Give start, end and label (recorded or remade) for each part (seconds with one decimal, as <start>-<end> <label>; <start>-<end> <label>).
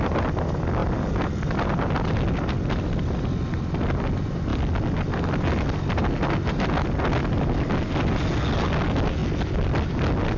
0.0-10.4 recorded